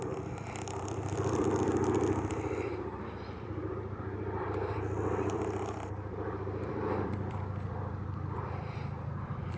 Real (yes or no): no